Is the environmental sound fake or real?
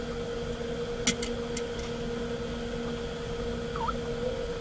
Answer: real